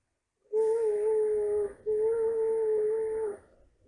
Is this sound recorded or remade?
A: recorded